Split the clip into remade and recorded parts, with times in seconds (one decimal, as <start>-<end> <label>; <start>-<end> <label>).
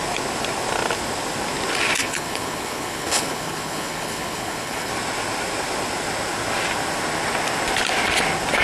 0.0-2.0 recorded; 2.0-4.9 remade; 4.9-8.6 recorded